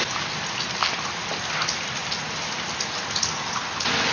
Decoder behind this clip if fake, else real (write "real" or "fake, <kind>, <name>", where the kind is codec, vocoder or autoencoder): real